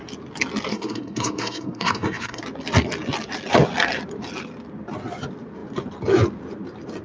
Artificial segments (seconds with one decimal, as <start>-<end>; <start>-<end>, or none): 0.7-2.4